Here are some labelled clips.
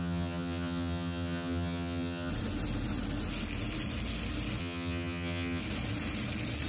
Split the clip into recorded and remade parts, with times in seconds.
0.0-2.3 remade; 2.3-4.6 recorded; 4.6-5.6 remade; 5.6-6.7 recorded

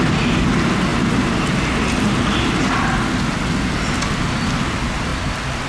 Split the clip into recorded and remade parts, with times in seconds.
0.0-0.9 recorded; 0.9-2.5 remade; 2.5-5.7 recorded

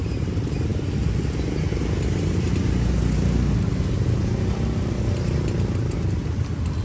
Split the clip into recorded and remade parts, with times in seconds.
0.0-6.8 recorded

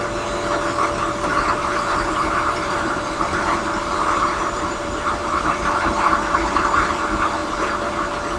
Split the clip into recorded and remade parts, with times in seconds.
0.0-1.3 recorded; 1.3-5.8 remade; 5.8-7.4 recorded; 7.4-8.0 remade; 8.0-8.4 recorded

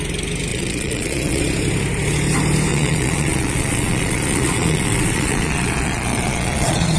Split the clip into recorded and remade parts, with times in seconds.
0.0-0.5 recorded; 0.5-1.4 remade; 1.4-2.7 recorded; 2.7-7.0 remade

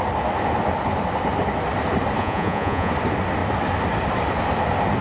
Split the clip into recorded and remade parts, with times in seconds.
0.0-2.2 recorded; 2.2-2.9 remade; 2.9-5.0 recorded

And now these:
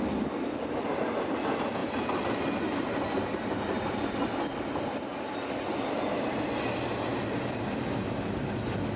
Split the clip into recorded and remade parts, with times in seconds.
0.0-9.0 recorded

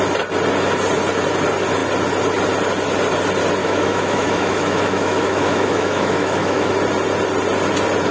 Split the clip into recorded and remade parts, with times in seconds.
0.0-3.6 recorded; 3.6-6.7 remade; 6.7-8.1 recorded